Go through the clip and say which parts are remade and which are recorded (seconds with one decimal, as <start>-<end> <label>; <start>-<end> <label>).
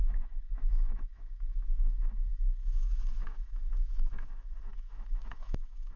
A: 0.0-6.0 remade